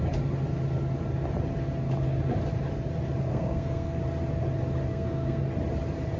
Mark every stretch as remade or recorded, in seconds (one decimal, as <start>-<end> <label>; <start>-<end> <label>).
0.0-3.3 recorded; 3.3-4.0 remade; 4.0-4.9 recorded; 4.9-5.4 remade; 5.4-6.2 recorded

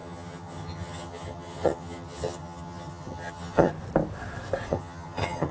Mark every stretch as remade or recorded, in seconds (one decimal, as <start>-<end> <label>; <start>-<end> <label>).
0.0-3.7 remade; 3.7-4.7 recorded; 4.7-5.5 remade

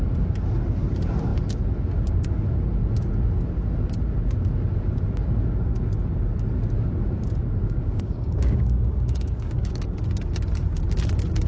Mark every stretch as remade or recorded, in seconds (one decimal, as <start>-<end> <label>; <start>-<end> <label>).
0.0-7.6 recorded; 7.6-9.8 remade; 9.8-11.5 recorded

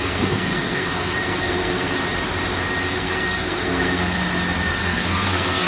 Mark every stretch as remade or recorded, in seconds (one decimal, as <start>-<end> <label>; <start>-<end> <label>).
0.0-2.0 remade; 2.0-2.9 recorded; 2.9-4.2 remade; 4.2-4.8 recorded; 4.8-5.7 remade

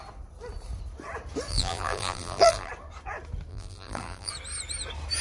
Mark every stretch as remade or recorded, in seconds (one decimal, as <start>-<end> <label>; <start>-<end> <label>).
0.0-1.5 recorded; 1.5-2.7 remade; 2.7-3.5 recorded; 3.5-4.3 remade; 4.3-5.2 recorded

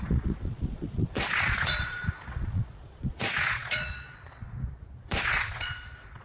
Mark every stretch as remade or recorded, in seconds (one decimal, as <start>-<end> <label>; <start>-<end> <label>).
0.0-6.2 remade

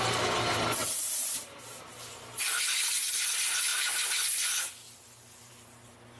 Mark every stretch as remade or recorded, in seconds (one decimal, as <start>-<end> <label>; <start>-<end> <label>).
0.0-6.2 recorded

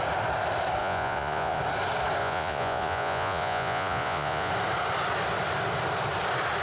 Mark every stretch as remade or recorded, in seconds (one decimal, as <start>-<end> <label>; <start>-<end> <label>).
0.0-0.8 recorded; 0.8-1.6 remade; 1.6-2.2 recorded; 2.2-4.5 remade; 4.5-6.6 recorded